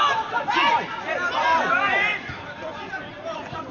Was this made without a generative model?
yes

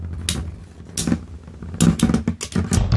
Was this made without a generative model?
yes